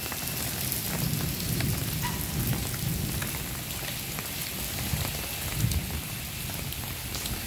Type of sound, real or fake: real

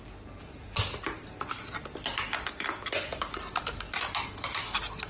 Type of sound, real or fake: real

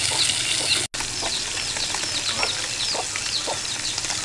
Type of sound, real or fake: real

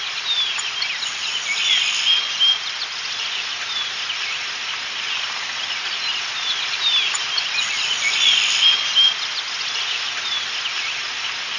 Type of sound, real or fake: real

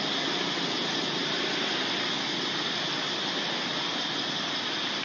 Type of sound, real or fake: real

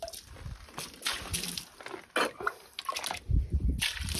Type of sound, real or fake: real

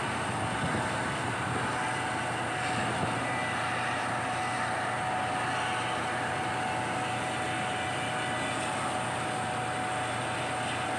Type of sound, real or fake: real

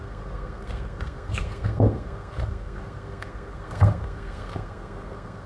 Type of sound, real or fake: fake